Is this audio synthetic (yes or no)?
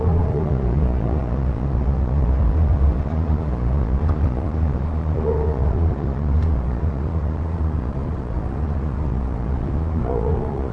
yes